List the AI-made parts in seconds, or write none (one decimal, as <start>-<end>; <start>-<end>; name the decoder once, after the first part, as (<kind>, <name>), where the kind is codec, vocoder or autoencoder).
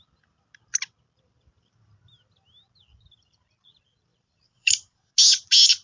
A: 4.1-5.1 (vocoder, BigVGAN v2)